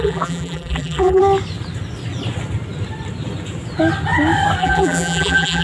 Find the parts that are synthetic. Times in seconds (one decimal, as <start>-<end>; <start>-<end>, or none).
0.0-1.2; 4.6-5.6